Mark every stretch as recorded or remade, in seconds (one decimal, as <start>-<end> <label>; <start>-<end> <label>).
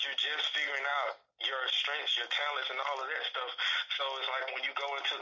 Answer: 0.0-5.2 recorded